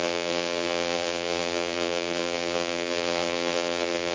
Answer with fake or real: fake